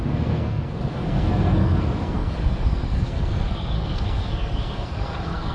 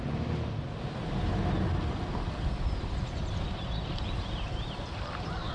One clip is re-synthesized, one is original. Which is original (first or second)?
second